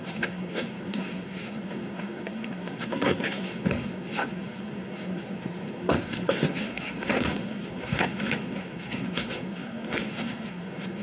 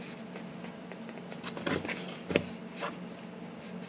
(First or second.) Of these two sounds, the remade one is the first